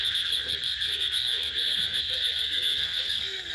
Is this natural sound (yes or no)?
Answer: no